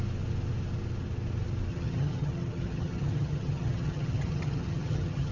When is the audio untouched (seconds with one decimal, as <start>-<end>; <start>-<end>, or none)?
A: 0.0-1.7